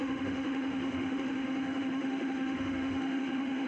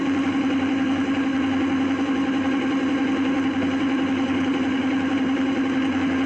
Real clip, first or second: second